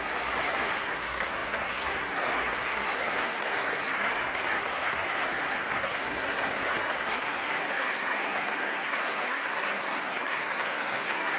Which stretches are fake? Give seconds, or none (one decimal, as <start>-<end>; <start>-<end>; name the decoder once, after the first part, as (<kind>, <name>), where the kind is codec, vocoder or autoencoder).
0.0-11.4 (codec, SNAC)